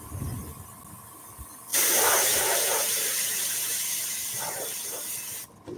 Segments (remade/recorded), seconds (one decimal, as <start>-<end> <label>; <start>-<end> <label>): 0.0-1.7 recorded; 1.7-5.2 remade; 5.2-5.8 recorded